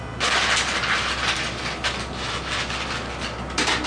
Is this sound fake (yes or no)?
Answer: no